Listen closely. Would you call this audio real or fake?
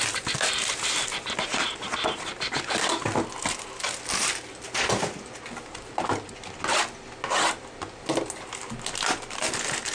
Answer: real